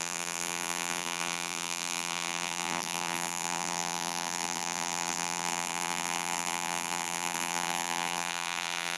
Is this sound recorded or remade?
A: remade